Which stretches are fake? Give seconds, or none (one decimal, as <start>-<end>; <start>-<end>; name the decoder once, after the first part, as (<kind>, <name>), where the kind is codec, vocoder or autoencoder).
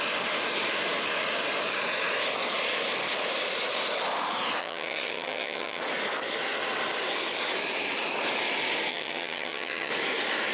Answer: 4.6-5.8 (vocoder, HiFi-GAN); 8.9-9.9